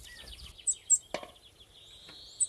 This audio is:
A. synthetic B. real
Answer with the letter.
B